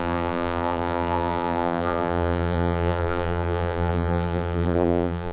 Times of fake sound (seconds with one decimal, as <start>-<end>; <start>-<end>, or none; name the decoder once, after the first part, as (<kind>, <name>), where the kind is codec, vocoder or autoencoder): 0.0-5.3 (vocoder, BigVGAN v2)